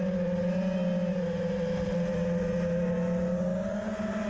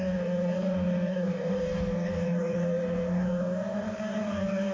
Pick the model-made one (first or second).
second